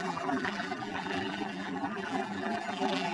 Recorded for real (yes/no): no